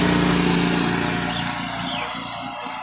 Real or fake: real